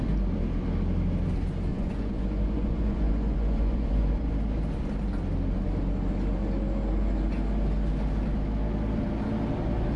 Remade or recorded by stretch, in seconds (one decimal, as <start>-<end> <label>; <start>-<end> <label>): 0.0-1.7 recorded; 1.7-4.3 remade; 4.3-10.0 recorded

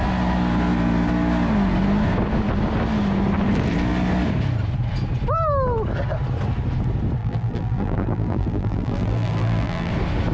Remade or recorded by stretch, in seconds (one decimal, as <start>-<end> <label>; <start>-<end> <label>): 0.0-7.2 recorded; 7.2-9.9 remade; 9.9-10.3 recorded

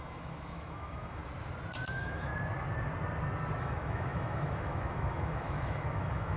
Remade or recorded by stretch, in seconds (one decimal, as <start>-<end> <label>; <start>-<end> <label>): 0.0-1.2 remade; 1.2-1.9 recorded; 1.9-2.3 remade; 2.3-3.6 recorded; 3.6-6.4 remade

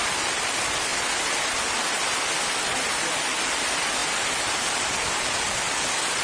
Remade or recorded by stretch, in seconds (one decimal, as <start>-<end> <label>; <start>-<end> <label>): 0.0-6.2 recorded

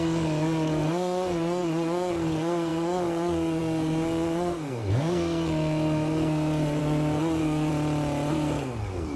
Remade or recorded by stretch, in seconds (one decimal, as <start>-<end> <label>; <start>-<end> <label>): 0.0-7.7 remade; 7.7-8.3 recorded; 8.3-9.2 remade

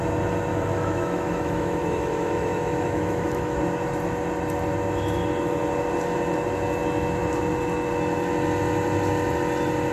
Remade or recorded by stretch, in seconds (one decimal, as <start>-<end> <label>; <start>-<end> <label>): 0.0-0.5 recorded; 0.5-3.6 remade; 3.6-9.9 recorded